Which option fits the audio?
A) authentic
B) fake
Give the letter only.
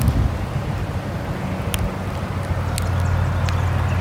A